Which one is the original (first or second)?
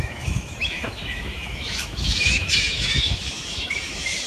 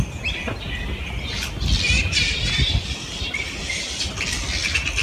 second